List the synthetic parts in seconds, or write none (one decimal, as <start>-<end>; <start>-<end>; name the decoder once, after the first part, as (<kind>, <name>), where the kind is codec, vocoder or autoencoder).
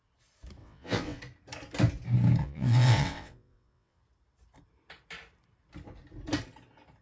0.6-1.2 (vocoder, WaveNeXt); 2.4-4.0